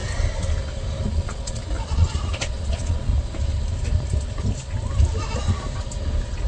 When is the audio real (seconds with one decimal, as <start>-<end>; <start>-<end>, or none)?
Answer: 0.0-1.1; 3.1-6.5